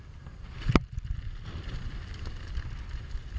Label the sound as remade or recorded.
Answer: recorded